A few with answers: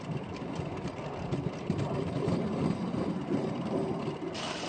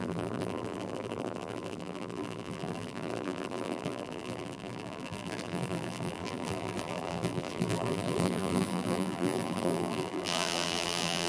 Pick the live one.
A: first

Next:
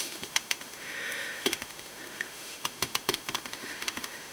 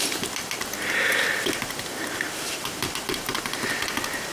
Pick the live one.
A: second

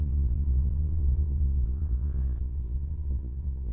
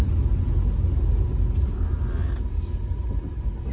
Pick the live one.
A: second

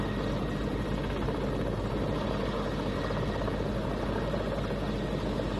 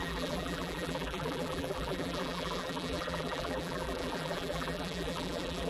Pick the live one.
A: first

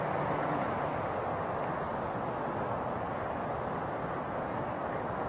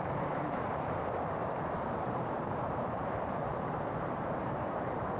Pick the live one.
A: first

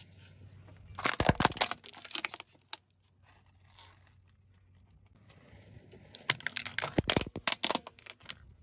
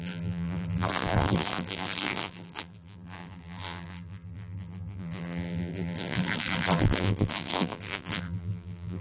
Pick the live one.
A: first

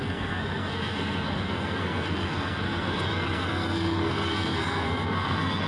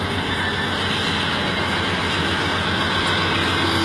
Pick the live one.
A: second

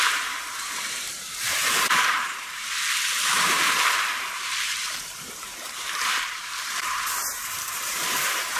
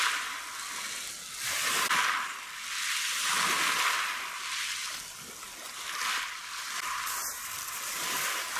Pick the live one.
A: second